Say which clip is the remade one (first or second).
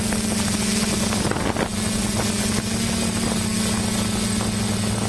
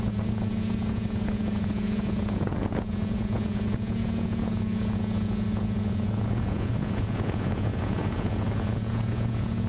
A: second